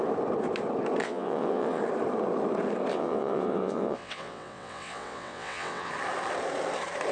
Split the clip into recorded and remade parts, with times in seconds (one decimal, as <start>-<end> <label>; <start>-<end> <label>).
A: 0.0-1.0 recorded; 1.0-1.8 remade; 1.8-2.9 recorded; 2.9-5.9 remade; 5.9-7.1 recorded